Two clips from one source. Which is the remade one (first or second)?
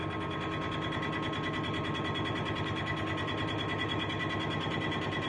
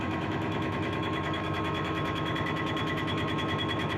second